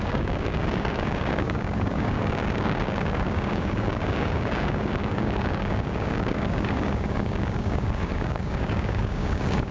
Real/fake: fake